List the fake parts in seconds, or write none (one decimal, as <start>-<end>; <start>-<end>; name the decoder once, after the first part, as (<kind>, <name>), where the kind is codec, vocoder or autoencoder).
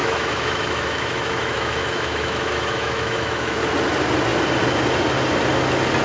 0.0-3.6 (autoencoder, DAC-VAE)